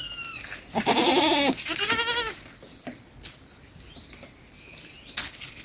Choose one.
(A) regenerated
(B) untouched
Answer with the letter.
B